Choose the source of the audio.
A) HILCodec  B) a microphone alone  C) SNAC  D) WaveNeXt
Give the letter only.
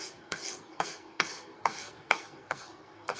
C